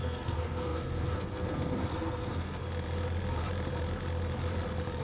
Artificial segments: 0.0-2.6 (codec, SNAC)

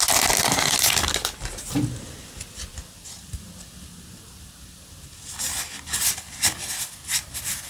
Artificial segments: none

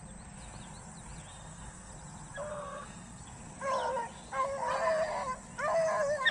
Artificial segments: 1.3-1.9 (codec, SNAC); 2.5-3.2

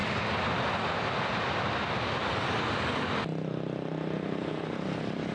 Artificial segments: none

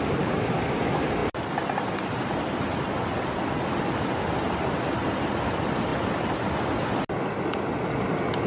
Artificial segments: none